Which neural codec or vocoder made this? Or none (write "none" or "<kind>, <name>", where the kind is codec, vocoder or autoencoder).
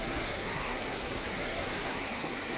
codec, SNAC